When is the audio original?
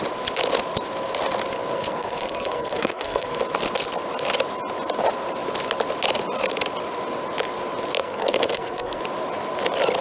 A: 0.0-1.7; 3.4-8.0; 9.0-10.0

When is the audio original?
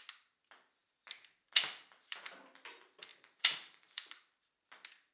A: 0.0-3.1; 4.3-5.1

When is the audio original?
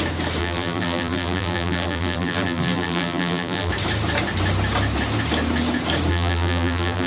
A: 0.0-0.4; 3.7-6.1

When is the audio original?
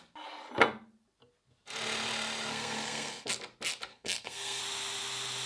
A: 0.0-2.5; 3.3-3.9; 4.6-5.5